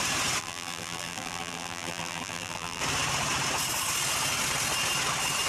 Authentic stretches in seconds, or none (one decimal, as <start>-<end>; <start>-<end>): 0.0-0.4; 2.8-5.5